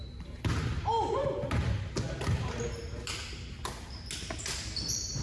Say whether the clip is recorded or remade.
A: recorded